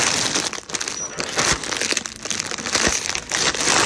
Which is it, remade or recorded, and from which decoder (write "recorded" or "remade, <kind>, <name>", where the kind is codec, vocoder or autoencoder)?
recorded